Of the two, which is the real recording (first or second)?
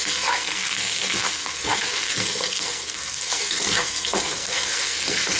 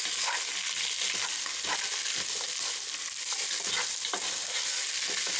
second